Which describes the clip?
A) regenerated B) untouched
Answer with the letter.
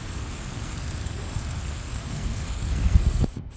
A